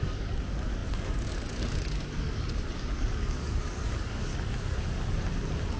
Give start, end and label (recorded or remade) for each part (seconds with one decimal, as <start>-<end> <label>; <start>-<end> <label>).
0.0-4.3 remade; 4.3-5.8 recorded